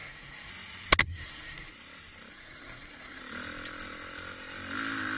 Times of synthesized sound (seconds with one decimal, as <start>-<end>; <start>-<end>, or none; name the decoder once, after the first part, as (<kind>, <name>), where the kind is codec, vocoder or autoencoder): 0.0-0.5 (codec, SNAC); 1.0-1.7; 2.3-3.2